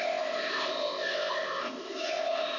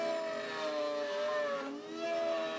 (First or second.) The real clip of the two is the second